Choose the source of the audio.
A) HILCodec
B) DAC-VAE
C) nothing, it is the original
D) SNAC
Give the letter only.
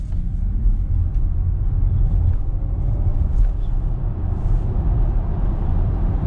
C